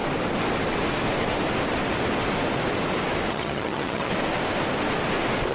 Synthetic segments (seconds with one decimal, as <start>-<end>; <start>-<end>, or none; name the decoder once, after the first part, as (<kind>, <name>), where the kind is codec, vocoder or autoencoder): 3.3-4.1 (vocoder, HiFi-GAN)